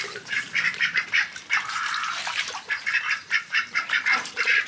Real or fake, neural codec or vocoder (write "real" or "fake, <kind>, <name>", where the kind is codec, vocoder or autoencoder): fake, vocoder, BigVGAN v2